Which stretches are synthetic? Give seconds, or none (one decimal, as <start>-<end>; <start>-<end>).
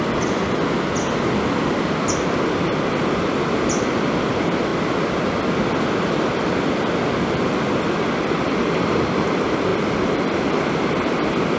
none